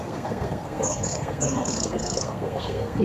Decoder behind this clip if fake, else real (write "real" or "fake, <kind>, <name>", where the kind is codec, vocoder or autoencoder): fake, codec, SNAC